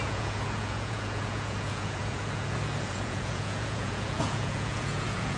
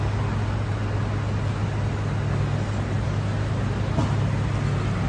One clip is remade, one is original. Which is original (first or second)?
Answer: second